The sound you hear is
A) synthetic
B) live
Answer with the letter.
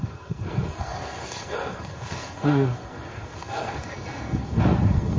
A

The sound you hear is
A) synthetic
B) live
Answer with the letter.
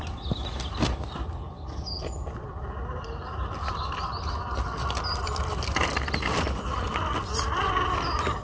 B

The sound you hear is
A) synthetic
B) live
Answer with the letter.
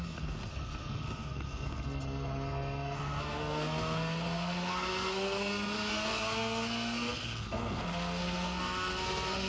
A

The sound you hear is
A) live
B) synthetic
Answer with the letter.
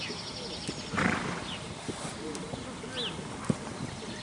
A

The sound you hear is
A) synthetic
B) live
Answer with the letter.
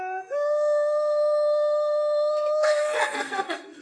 A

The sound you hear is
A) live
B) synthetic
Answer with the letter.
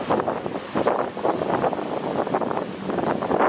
A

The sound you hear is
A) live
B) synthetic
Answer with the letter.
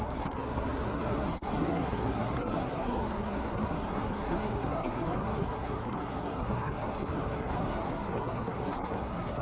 B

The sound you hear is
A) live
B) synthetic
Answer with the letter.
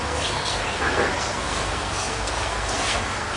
B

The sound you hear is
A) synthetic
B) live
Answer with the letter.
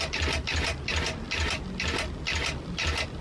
B